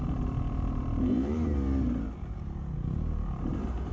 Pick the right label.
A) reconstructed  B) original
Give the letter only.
A